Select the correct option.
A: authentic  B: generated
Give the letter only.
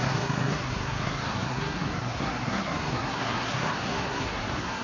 B